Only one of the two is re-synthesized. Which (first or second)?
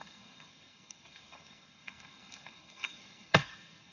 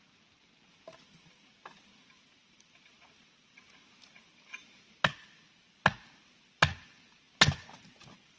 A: first